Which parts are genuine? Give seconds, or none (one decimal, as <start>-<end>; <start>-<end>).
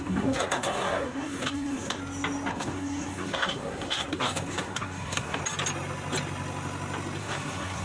2.0-2.5; 5.4-7.2